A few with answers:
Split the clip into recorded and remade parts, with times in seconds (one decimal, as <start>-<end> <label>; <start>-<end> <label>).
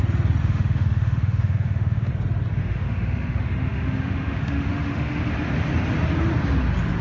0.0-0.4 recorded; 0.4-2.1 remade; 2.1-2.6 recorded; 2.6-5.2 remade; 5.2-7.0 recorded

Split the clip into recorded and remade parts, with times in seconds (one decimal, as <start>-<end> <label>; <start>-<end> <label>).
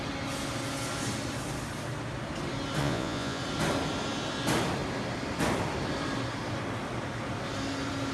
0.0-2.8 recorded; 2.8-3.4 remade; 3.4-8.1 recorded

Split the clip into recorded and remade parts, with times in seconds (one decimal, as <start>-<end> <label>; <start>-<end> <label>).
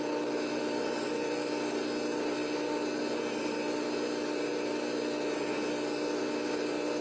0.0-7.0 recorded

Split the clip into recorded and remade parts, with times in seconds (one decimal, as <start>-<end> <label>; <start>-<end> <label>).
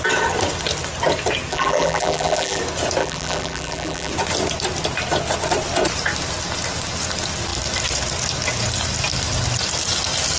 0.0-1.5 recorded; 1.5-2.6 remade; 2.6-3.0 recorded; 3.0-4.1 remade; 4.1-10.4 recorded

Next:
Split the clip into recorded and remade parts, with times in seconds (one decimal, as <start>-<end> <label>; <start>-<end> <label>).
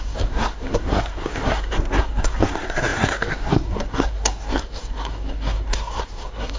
0.0-6.6 remade